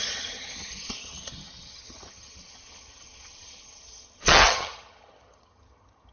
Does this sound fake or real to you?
fake